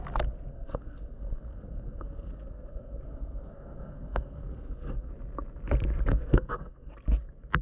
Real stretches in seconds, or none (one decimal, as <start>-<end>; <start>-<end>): 0.0-0.5; 5.1-6.1; 6.9-7.6